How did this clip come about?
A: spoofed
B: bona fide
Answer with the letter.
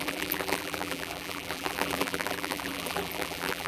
A